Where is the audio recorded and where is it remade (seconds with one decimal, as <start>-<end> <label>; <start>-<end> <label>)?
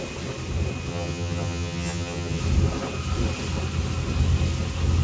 0.0-0.9 recorded; 0.9-2.4 remade; 2.4-5.0 recorded